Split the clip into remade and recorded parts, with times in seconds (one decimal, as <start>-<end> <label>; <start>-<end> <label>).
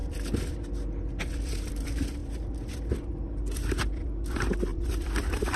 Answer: 0.0-4.7 recorded; 4.7-5.6 remade